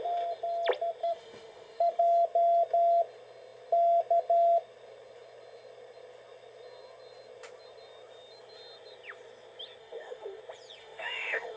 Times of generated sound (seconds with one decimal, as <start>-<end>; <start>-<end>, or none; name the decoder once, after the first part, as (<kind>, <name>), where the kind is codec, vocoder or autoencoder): 1.0-2.0 (autoencoder, DAC-VAE); 9.8-10.4; 10.8-11.6